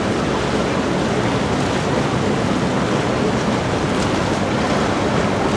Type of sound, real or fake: real